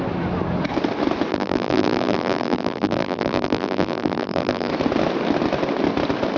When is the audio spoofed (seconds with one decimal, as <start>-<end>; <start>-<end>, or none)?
1.3-4.7